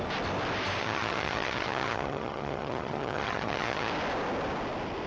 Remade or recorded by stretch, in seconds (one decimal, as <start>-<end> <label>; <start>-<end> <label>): 0.0-0.8 recorded; 0.8-3.9 remade; 3.9-5.1 recorded